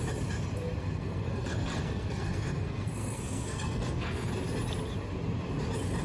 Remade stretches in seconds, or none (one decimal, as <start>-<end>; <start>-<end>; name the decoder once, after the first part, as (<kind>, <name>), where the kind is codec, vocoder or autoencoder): 0.8-4.3 (codec, SNAC)